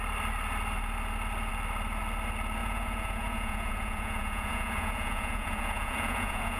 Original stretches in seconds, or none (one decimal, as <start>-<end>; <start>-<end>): 0.0-2.6